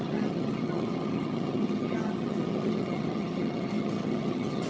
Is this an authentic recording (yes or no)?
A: no